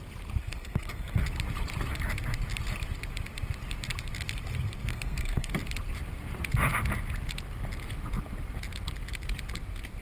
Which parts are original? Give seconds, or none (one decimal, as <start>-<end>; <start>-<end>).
0.0-0.4; 1.2-4.9; 5.5-10.0